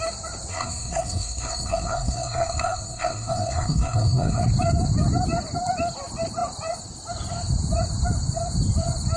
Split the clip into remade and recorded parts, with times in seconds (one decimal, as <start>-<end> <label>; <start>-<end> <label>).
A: 0.0-0.5 recorded; 0.5-4.4 remade; 4.4-9.2 recorded